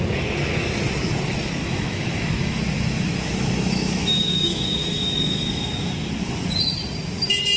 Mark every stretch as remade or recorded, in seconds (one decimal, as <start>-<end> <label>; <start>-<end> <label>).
0.0-1.6 recorded; 1.6-6.1 remade; 6.1-7.6 recorded